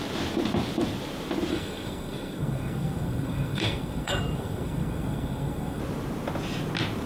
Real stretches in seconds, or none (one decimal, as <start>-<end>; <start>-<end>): 0.0-1.5; 5.8-7.1